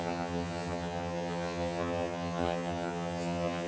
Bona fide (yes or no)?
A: no